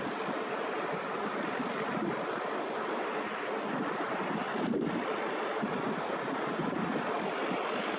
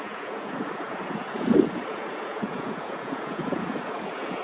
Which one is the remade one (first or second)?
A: second